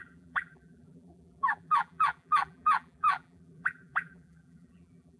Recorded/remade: remade